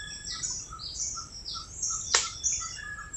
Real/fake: fake